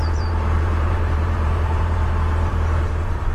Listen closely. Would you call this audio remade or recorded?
remade